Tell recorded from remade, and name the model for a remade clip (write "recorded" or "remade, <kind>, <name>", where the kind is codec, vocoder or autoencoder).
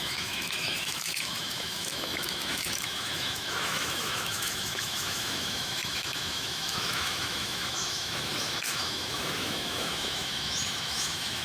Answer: remade, autoencoder, DAC-VAE